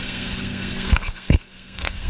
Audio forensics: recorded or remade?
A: remade